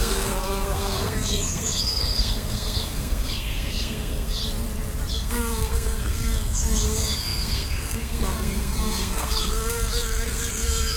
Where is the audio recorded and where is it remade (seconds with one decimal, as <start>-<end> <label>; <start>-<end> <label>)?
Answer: 0.0-4.4 remade; 4.4-5.1 recorded; 5.1-11.0 remade